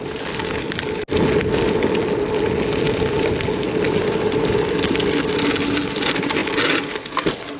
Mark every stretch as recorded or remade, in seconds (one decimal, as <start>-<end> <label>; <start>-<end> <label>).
0.0-7.6 recorded